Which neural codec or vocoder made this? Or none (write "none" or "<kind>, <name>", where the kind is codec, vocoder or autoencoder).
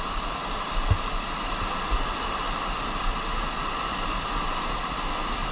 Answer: none